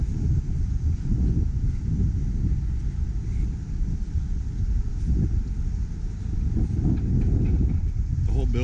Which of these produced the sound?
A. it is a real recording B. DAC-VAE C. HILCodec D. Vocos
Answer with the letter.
A